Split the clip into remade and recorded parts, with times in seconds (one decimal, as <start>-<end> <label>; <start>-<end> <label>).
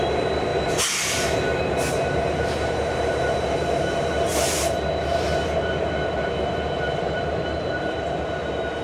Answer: 0.0-8.8 remade